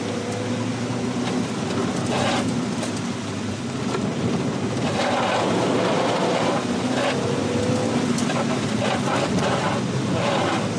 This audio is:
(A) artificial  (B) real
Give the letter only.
B